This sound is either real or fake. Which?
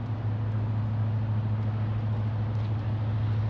real